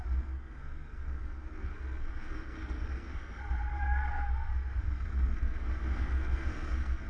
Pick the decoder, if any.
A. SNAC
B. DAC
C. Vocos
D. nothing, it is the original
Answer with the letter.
A